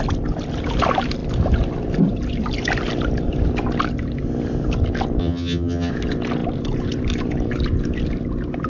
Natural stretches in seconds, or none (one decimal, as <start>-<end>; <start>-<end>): 0.0-5.2; 5.9-8.7